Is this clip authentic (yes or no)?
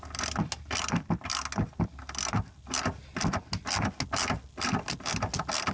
yes